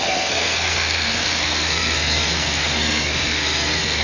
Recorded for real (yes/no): no